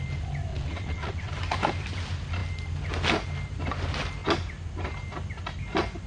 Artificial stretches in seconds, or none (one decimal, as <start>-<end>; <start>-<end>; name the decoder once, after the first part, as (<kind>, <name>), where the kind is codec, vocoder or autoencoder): 0.5-1.3 (vocoder, WaveNeXt)